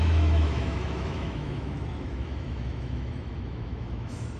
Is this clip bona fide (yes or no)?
no